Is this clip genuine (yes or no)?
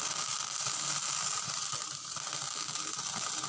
yes